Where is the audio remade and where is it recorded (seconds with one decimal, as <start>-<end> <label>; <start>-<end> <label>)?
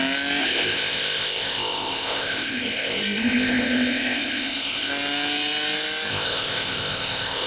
0.0-0.4 recorded; 0.4-4.9 remade; 4.9-6.1 recorded; 6.1-7.5 remade